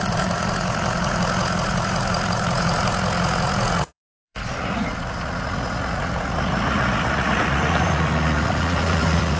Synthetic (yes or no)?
yes